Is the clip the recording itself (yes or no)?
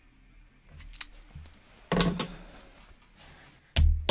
yes